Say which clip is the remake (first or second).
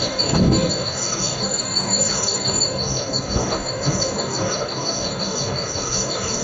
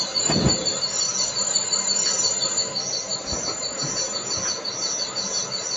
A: first